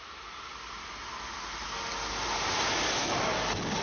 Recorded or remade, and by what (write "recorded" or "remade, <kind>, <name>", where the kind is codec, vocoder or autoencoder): recorded